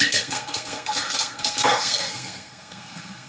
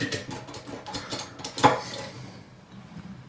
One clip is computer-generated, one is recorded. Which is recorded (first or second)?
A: second